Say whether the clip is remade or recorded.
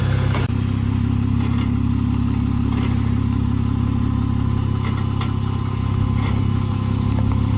recorded